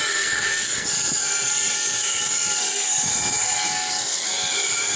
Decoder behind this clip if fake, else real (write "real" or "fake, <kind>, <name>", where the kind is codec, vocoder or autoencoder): fake, codec, SNAC